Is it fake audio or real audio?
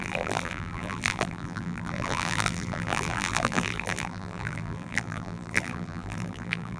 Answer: fake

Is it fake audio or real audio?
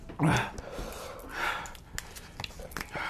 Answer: real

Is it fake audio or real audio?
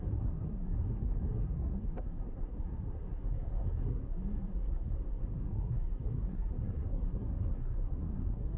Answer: fake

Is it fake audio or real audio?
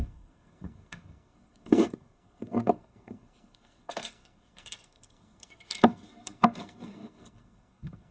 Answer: fake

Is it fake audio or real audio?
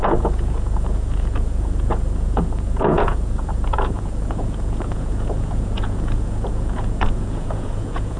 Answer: fake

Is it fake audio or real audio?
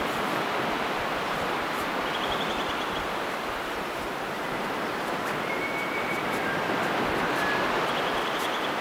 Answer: fake